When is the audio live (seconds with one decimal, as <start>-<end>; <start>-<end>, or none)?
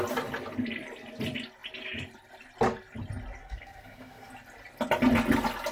0.0-3.4; 4.3-5.7